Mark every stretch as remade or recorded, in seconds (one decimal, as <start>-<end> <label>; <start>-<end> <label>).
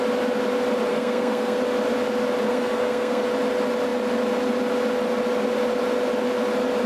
0.0-0.9 recorded; 0.9-1.6 remade; 1.6-2.5 recorded; 2.5-3.2 remade; 3.2-6.9 recorded